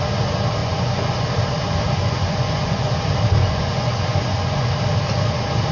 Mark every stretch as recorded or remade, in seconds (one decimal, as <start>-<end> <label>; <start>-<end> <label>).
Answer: 0.0-0.6 recorded; 0.6-1.3 remade; 1.3-2.0 recorded; 2.0-2.9 remade; 2.9-3.4 recorded; 3.4-4.7 remade; 4.7-5.7 recorded